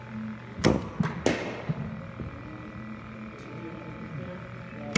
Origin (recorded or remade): recorded